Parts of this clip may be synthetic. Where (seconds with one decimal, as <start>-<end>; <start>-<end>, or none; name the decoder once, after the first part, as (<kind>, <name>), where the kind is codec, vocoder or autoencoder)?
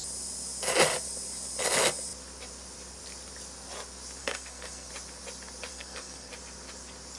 4.2-4.9 (codec, SNAC); 5.7-6.3